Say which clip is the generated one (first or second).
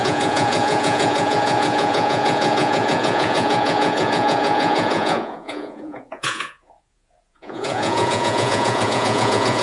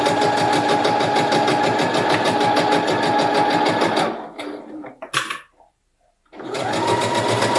first